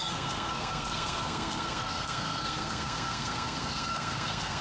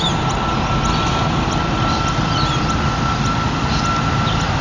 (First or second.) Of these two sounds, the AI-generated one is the first